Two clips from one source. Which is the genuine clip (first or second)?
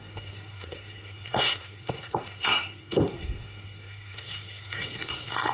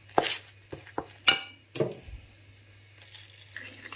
second